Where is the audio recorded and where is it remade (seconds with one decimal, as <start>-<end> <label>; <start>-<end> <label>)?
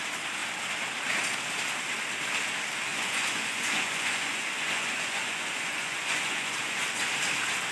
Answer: 0.0-2.9 recorded; 2.9-7.1 remade; 7.1-7.7 recorded